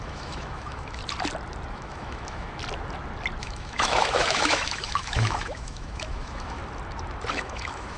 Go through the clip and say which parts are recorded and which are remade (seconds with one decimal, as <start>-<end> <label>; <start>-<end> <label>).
0.0-1.0 remade; 1.0-1.7 recorded; 1.7-2.6 remade; 2.6-3.4 recorded; 3.4-6.6 remade; 6.6-7.3 recorded; 7.3-8.0 remade